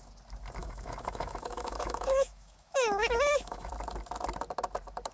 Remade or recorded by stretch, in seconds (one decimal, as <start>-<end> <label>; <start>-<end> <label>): 0.0-0.6 recorded; 0.6-3.7 remade; 3.7-5.1 recorded